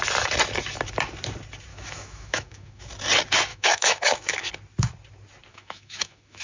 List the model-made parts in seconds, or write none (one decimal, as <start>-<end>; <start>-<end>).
1.7-2.9; 3.5-4.5; 5.5-6.4